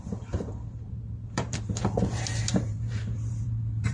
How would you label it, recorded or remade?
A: remade